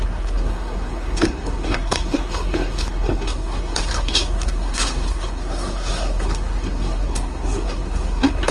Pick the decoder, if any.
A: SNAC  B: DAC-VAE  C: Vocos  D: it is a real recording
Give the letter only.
A